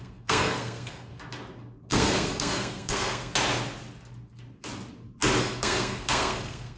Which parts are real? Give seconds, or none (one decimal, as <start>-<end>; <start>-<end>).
1.1-1.9; 3.3-5.4